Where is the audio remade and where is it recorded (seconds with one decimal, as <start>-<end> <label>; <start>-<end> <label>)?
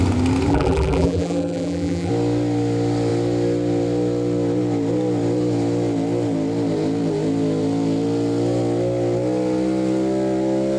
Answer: 0.0-0.5 recorded; 0.5-2.1 remade; 2.1-10.8 recorded